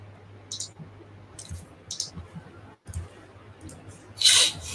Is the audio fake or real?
real